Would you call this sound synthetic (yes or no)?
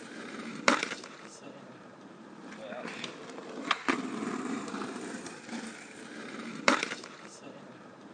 yes